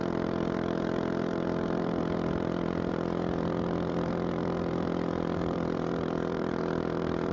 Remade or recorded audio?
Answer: remade